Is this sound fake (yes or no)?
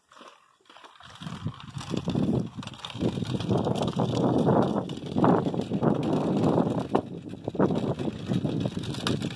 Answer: no